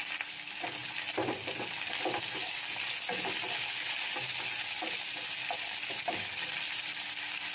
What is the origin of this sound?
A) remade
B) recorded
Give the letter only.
B